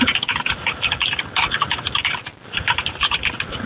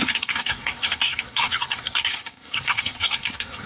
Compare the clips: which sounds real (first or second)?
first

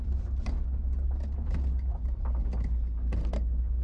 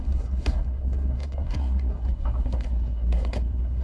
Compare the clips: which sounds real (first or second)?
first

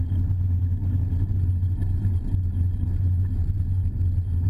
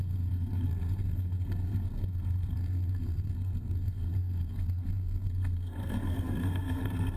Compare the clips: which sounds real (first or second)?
first